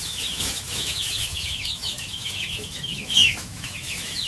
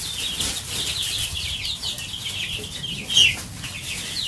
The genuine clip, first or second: second